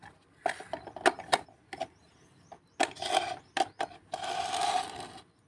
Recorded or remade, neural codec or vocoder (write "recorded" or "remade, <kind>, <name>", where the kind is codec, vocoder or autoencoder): recorded